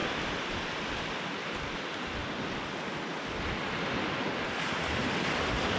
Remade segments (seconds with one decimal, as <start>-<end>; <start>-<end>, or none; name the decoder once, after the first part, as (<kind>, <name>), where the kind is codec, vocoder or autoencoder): none